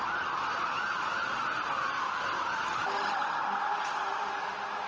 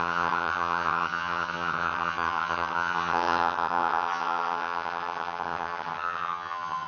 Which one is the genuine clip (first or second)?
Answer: first